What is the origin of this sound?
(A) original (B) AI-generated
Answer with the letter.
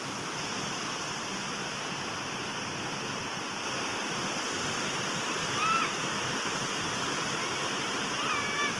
A